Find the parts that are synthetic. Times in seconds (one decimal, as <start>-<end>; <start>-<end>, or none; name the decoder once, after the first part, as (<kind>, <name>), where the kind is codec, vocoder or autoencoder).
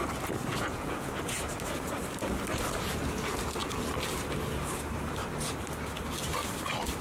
0.5-1.1 (vocoder, Vocos)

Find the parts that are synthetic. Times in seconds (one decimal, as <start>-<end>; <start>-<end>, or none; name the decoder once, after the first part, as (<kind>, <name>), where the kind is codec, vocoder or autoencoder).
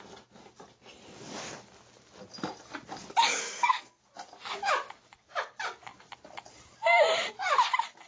3.4-4.0 (codec, SNAC)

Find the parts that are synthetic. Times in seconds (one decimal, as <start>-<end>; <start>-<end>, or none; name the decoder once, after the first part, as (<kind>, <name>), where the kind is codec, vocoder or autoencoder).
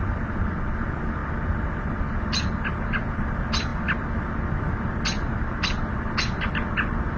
none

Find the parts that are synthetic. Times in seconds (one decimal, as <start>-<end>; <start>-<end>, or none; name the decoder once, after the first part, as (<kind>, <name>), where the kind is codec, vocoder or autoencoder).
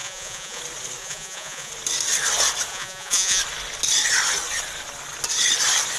0.0-0.6 (vocoder, Vocos); 1.0-1.7; 2.7-3.4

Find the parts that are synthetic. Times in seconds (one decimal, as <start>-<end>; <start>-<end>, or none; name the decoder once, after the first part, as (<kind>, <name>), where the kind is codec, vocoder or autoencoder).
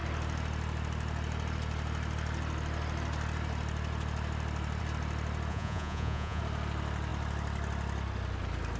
5.5-6.4 (vocoder, Vocos)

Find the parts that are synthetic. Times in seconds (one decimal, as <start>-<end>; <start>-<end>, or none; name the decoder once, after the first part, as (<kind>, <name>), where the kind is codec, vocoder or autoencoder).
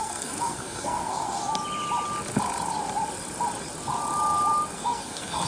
0.0-1.4 (codec, SNAC); 4.7-5.5